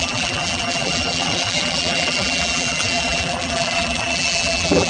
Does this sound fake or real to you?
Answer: fake